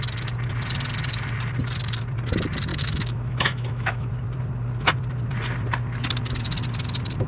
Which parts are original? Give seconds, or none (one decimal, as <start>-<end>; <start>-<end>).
0.0-2.7; 4.1-7.3